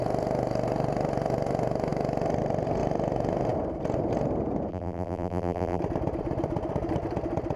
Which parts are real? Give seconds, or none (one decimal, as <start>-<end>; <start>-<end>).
0.0-4.7; 5.8-7.6